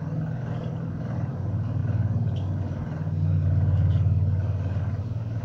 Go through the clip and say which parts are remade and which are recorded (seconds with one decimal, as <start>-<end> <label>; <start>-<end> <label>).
0.0-5.4 remade